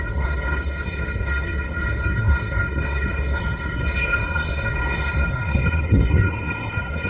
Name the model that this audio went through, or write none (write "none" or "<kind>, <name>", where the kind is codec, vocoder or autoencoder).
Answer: codec, SNAC